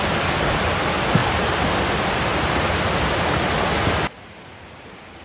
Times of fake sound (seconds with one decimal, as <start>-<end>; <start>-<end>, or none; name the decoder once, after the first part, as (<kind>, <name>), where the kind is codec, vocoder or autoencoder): none